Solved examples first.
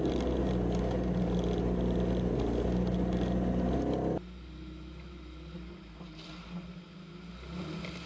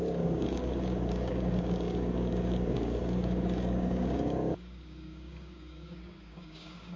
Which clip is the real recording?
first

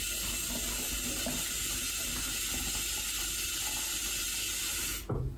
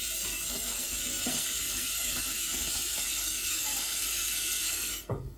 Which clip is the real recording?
first